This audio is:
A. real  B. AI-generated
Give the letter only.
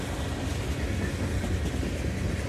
A